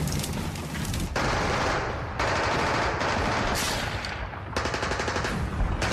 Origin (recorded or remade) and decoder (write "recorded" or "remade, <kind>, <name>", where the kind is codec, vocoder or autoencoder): recorded